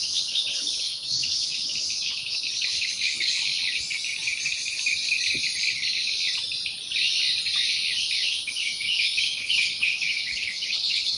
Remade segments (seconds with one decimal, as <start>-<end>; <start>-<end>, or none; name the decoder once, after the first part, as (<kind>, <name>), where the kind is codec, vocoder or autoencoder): 0.0-3.5 (codec, HILCodec); 8.0-11.2